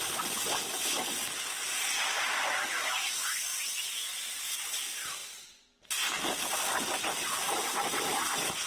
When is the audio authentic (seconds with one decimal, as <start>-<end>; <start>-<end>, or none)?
0.0-8.7